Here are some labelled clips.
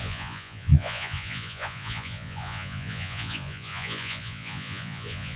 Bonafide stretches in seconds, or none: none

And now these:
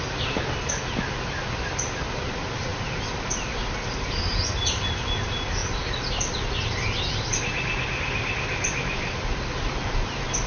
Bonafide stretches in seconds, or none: 0.0-10.5

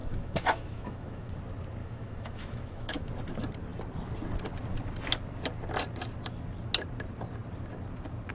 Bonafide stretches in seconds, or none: 1.3-1.8; 3.1-8.3

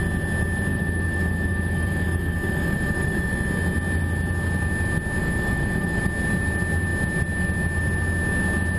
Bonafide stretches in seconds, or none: 0.0-0.7; 3.3-5.2; 6.0-8.8

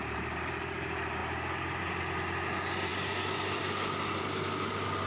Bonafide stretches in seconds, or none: 0.0-5.1

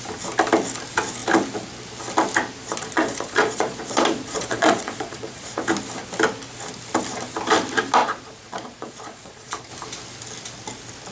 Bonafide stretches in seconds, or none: 0.0-2.6; 5.6-8.0; 9.7-11.1